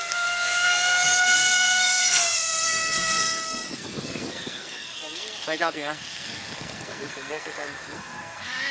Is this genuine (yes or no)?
no